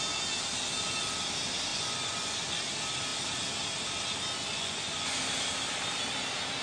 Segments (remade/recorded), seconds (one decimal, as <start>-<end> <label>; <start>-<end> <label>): 0.0-1.7 recorded; 1.7-2.6 remade; 2.6-4.5 recorded; 4.5-5.2 remade; 5.2-6.6 recorded